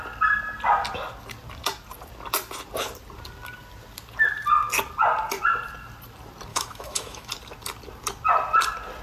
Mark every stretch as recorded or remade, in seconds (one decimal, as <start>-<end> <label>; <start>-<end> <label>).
0.0-6.5 recorded; 6.5-7.3 remade; 7.3-9.0 recorded

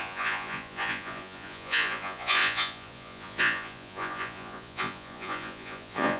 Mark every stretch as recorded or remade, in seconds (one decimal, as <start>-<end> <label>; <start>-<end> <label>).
0.0-6.2 remade

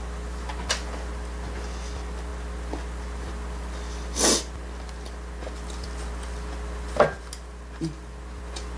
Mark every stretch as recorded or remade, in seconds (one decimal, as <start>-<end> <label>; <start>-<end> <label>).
0.0-8.8 recorded

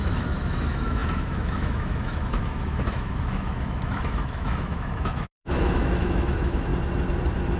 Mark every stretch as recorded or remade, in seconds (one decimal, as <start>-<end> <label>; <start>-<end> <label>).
0.0-6.7 remade; 6.7-7.6 recorded

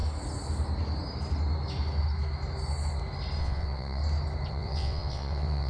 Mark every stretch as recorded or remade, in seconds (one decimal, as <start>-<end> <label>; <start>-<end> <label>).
0.0-3.4 recorded; 3.4-4.0 remade; 4.0-4.5 recorded; 4.5-5.7 remade

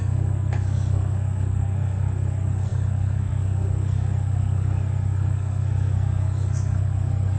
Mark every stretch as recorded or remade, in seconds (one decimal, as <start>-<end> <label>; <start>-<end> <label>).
0.0-7.4 remade

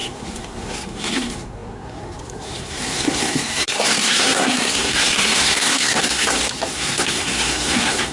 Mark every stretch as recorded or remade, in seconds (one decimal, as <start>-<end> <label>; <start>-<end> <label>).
0.0-8.1 remade

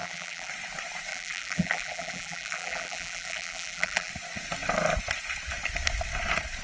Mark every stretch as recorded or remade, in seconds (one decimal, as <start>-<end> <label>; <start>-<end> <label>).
0.0-0.5 remade; 0.5-1.1 recorded; 1.1-4.1 remade; 4.1-6.6 recorded